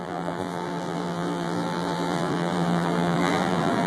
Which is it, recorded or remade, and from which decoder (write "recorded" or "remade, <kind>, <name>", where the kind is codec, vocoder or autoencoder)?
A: remade, vocoder, BigVGAN v2